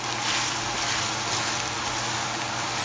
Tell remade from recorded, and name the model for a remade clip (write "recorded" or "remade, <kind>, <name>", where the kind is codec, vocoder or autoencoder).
recorded